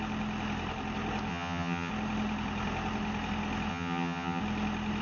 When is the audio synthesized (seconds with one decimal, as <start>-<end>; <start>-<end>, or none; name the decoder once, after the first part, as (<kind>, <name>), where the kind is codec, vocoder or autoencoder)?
1.3-1.9 (vocoder, HiFi-GAN); 3.7-4.4